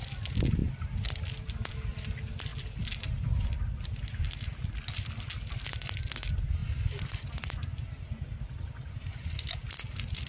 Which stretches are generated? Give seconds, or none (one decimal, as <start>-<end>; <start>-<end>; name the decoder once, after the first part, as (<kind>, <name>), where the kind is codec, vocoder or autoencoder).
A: none